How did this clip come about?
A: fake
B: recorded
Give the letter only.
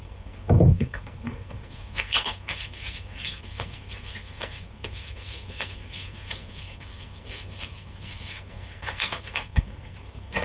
A